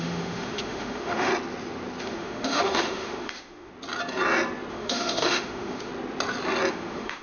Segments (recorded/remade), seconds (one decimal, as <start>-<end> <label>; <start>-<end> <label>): 0.0-1.3 remade; 1.3-2.0 recorded; 2.0-3.7 remade; 3.7-4.7 recorded; 4.7-5.9 remade; 5.9-6.7 recorded; 6.7-7.2 remade